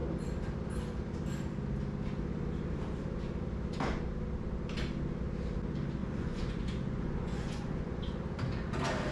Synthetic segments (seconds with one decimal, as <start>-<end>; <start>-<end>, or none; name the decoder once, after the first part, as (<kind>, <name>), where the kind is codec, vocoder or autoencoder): 6.0-8.0 (vocoder, Vocos)